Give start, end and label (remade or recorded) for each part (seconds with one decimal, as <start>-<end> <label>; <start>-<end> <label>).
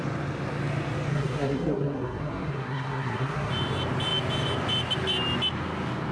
0.0-1.1 recorded; 1.1-3.5 remade; 3.5-6.1 recorded